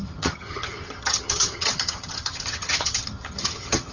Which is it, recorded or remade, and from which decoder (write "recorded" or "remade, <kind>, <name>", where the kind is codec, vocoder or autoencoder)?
remade, vocoder, HiFi-GAN